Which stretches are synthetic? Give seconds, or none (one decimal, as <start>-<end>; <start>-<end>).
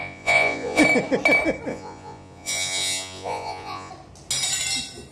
0.0-0.8; 1.7-3.9